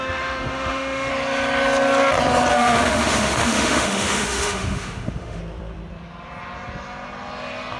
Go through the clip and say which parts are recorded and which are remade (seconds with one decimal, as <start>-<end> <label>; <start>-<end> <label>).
0.0-1.1 remade; 1.1-2.5 recorded; 2.5-5.4 remade; 5.4-7.8 recorded